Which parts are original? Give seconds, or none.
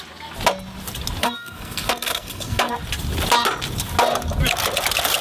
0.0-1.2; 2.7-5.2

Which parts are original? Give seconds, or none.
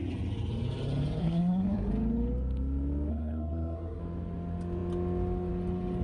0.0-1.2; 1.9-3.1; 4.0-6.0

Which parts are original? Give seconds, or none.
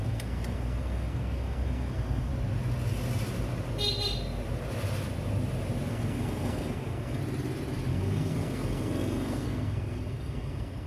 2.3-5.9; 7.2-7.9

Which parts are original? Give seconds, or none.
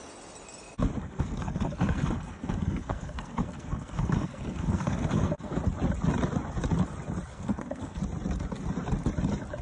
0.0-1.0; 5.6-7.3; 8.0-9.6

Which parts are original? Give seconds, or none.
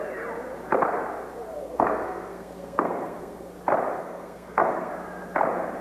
0.0-1.5; 3.5-4.0; 4.9-5.8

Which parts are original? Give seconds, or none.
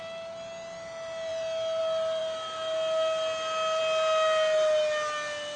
0.0-5.6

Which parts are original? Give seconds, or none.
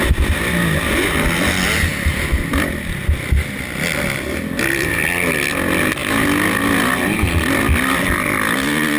0.0-9.0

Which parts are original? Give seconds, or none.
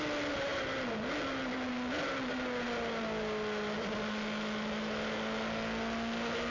0.0-6.5